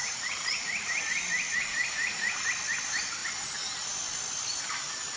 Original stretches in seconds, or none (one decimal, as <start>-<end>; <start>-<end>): 1.0-2.0; 2.5-5.2